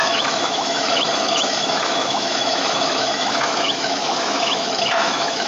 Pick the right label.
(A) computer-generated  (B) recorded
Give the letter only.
A